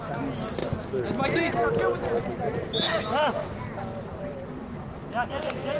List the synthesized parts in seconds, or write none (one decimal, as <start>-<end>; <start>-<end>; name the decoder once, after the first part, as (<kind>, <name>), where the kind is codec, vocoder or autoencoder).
none